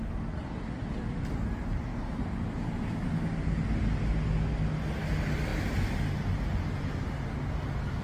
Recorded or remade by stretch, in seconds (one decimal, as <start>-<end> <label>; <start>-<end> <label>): 0.0-8.0 recorded